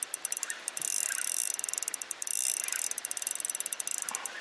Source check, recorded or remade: recorded